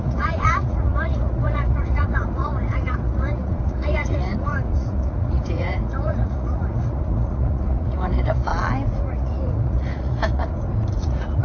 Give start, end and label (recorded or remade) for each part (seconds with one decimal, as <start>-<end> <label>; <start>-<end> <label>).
0.0-8.5 remade; 8.5-9.0 recorded; 9.0-10.5 remade; 10.5-11.0 recorded; 11.0-11.4 remade